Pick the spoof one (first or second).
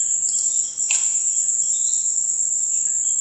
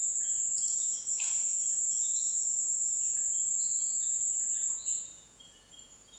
second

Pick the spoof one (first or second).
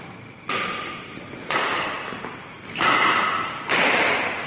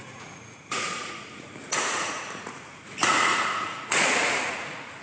second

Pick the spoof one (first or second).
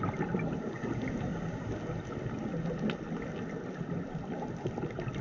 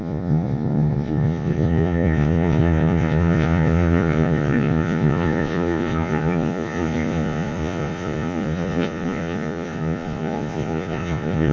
second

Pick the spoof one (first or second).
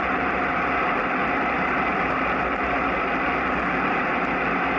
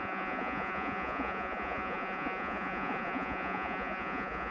second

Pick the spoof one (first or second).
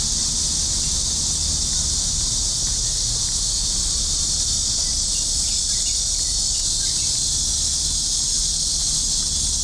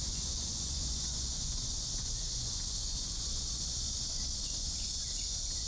second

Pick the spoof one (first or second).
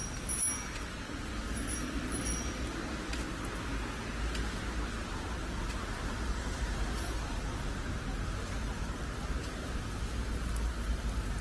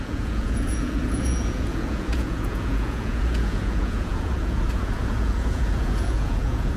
second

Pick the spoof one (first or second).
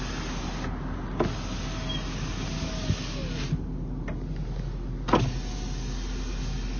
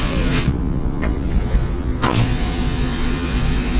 second